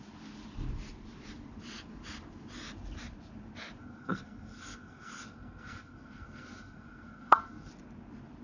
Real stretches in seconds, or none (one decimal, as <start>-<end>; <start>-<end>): 0.0-3.8; 7.7-8.4